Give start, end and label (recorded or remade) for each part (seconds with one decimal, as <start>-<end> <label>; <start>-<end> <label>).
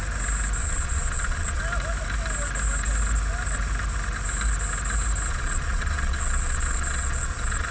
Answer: 0.0-0.6 recorded; 0.6-1.6 remade; 1.6-5.3 recorded; 5.3-7.7 remade